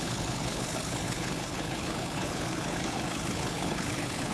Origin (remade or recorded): remade